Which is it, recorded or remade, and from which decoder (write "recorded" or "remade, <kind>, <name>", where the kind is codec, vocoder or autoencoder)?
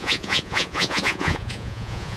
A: remade, vocoder, Vocos